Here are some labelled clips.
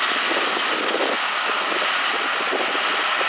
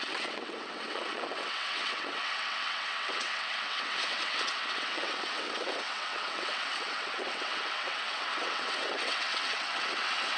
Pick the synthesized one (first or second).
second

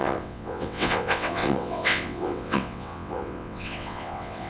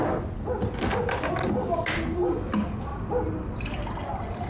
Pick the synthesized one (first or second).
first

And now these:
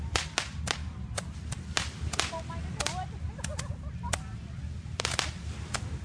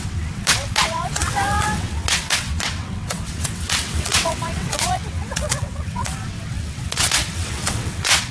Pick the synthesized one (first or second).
second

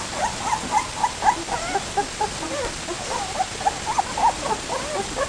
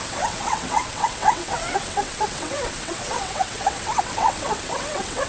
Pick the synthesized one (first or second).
second